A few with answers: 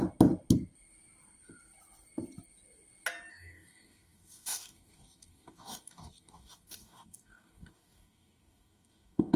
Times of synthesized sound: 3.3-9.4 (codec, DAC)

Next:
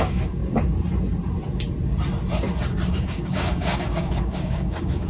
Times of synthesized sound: 0.0-0.4 (codec, DAC); 2.9-5.1

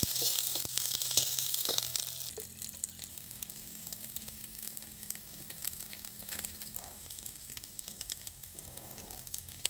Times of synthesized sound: 0.0-2.0 (codec, DAC); 3.1-9.7

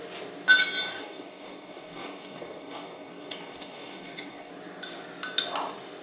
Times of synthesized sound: 0.9-4.5 (codec, DAC)

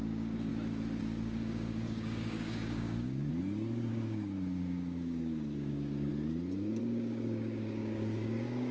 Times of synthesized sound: 0.0-0.5 (codec, DAC); 1.0-3.3; 3.9-6.1; 6.8-8.7

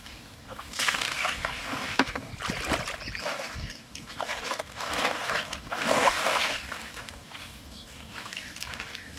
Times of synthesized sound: 0.0-2.3 (codec, DAC); 3.2-9.2

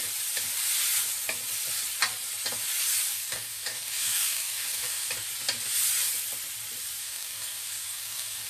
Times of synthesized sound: 3.1-5.1 (codec, DAC); 7.0-8.5